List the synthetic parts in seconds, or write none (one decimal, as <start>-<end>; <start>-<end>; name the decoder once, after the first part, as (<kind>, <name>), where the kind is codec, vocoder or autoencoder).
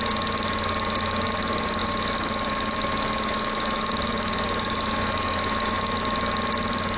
1.8-6.0 (autoencoder, DAC-VAE)